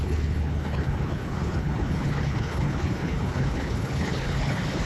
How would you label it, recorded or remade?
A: remade